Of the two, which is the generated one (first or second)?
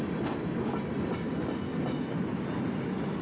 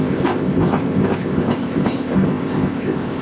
second